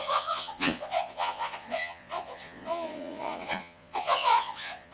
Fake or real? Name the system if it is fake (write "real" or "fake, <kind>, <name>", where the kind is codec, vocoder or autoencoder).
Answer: fake, vocoder, Vocos